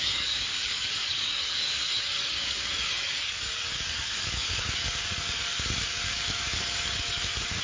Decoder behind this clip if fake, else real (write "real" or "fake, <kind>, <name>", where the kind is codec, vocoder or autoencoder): fake, codec, DAC